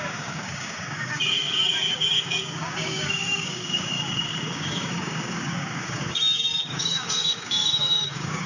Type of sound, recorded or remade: remade